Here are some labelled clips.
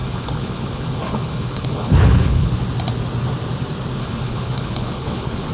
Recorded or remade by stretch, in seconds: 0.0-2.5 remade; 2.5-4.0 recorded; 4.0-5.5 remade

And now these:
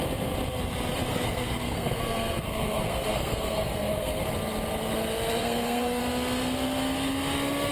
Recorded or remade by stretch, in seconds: 0.0-1.1 recorded; 1.1-4.2 remade; 4.2-5.4 recorded; 5.4-6.0 remade; 6.0-7.7 recorded

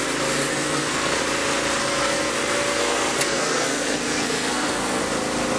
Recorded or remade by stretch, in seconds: 0.0-0.5 recorded; 0.5-1.2 remade; 1.2-1.8 recorded; 1.8-2.3 remade; 2.3-2.8 recorded; 2.8-5.0 remade; 5.0-5.6 recorded